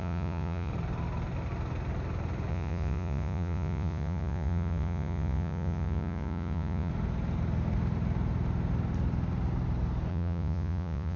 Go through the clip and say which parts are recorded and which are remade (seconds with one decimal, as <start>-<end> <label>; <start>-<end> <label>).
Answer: 0.0-0.7 remade; 0.7-2.5 recorded; 2.5-6.9 remade; 6.9-10.1 recorded; 10.1-11.2 remade